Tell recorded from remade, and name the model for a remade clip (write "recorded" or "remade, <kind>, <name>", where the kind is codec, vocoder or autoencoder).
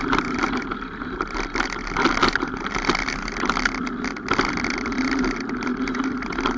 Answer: recorded